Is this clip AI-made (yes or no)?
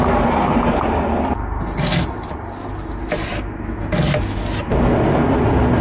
no